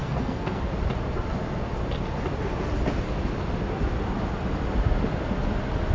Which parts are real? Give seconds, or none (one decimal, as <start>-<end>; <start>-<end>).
0.6-5.9